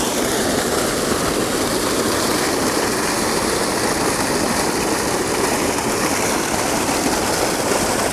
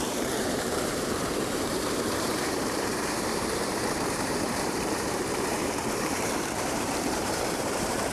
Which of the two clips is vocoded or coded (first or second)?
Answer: second